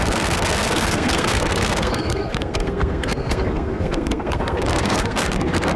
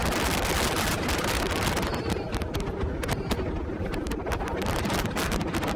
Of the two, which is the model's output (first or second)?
first